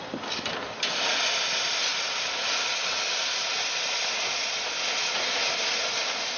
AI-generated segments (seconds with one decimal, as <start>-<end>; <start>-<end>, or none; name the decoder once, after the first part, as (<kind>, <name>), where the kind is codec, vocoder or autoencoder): none